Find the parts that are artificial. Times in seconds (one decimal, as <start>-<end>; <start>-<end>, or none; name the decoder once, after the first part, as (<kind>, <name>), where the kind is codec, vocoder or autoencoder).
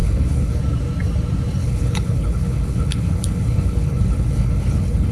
0.0-0.6 (codec, HILCodec); 1.6-5.1